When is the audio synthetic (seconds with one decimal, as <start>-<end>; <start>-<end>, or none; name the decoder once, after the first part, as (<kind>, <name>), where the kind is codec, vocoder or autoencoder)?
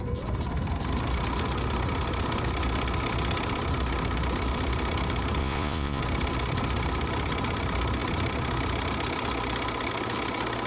5.4-6.0 (vocoder, Vocos)